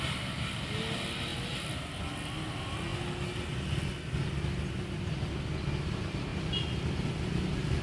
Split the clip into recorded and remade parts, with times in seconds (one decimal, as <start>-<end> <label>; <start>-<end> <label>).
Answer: 0.0-7.8 recorded